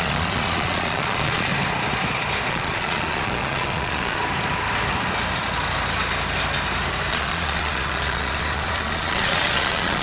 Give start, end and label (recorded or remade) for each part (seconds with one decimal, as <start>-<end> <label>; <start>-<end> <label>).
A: 0.0-1.5 remade; 1.5-2.5 recorded; 2.5-4.2 remade; 4.2-7.1 recorded; 7.1-10.0 remade